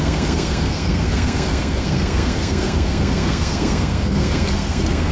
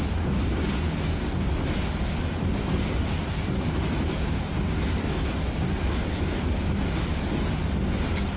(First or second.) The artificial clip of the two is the first